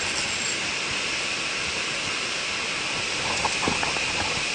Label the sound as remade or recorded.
recorded